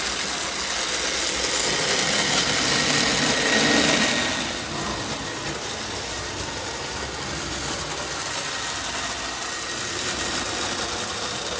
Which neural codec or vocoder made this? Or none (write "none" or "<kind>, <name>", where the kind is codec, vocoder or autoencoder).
none